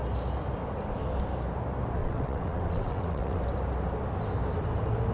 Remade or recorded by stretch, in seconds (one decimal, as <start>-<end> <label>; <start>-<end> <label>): 0.0-2.0 recorded; 2.0-3.4 remade; 3.4-5.1 recorded